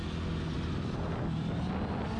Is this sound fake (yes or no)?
no